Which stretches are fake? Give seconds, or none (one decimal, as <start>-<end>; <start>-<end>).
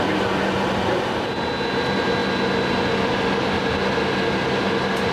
none